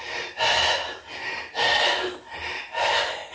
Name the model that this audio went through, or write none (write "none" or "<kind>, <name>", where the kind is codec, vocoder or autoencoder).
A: none